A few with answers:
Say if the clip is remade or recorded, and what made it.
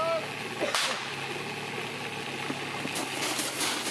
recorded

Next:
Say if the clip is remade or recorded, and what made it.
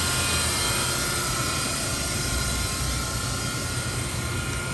recorded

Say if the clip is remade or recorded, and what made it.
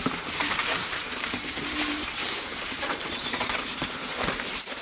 remade, vocoder, BigVGAN v2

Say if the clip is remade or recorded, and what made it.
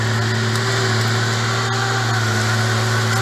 recorded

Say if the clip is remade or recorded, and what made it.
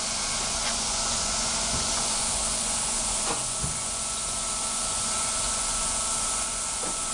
remade, vocoder, Vocos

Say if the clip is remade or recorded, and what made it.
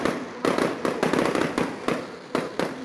recorded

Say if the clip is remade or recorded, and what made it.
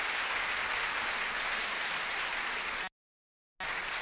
recorded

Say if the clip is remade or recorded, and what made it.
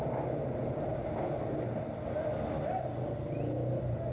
recorded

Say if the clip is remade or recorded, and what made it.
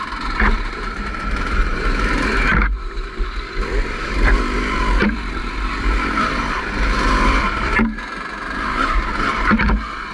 remade, vocoder, BigVGAN v2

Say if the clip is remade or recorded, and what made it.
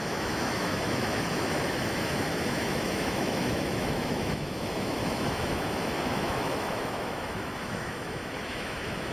remade, autoencoder, DAC-VAE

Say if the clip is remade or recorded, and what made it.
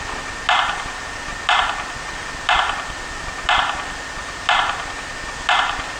recorded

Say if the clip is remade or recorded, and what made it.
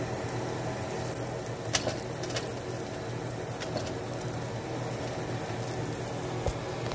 recorded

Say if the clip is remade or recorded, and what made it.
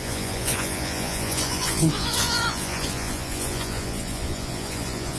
remade, vocoder, Vocos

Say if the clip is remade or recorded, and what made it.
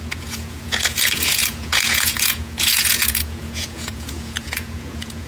remade, vocoder, Vocos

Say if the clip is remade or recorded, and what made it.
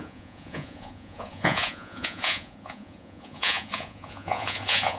remade, vocoder, Vocos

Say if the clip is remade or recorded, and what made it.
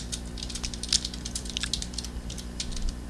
recorded